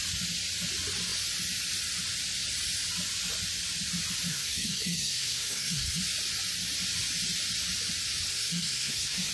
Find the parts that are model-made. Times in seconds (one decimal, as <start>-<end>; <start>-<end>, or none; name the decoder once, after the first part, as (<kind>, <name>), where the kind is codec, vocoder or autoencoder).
4.3-6.0 (codec, SNAC); 8.3-9.3